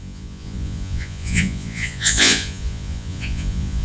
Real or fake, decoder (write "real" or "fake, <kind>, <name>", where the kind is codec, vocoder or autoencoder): fake, vocoder, Vocos